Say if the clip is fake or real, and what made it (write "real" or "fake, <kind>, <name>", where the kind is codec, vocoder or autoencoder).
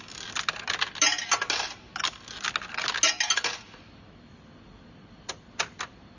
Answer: real